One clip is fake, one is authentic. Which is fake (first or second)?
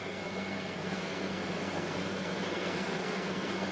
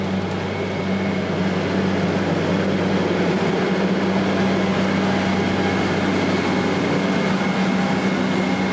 first